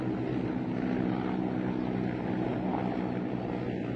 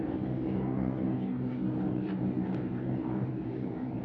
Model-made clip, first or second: second